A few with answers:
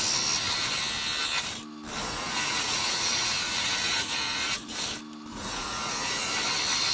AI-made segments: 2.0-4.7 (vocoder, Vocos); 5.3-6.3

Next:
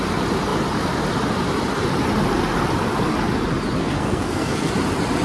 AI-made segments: 3.8-4.7 (codec, SNAC)

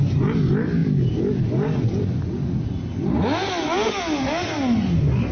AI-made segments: none

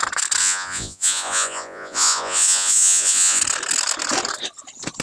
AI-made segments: 0.4-3.4 (vocoder, Vocos)

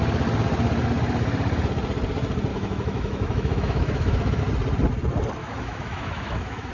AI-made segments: 2.5-4.4 (autoencoder, DAC-VAE); 5.4-6.7

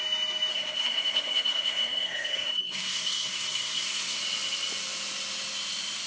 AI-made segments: 0.5-4.2 (codec, SNAC)

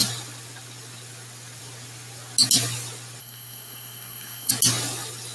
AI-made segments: 3.2-4.5 (codec, SNAC)

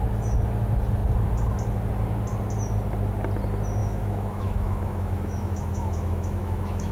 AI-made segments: 3.8-6.9 (autoencoder, DAC-VAE)